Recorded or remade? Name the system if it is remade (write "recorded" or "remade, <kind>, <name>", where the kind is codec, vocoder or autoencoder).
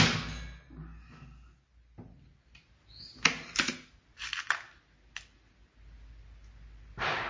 recorded